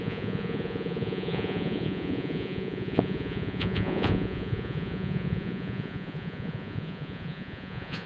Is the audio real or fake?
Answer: fake